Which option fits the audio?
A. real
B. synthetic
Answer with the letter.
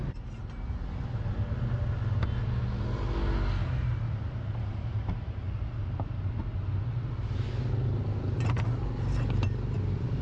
A